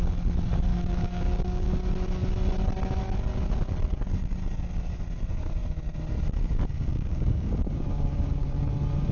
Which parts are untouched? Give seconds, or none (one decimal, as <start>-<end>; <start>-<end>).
0.0-0.7; 1.7-6.9; 8.7-9.1